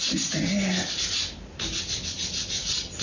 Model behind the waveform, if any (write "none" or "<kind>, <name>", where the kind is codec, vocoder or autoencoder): none